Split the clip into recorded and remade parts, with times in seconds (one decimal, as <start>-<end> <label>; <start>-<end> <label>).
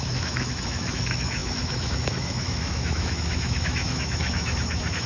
0.0-5.1 remade